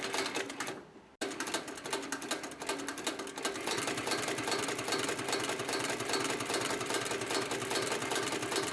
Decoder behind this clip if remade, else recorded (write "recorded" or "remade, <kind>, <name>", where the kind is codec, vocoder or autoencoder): recorded